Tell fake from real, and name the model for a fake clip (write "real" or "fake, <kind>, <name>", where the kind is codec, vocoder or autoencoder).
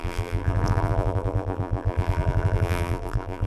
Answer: fake, vocoder, BigVGAN v2